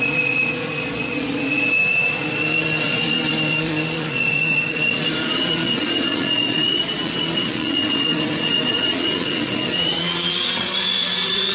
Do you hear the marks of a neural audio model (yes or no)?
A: yes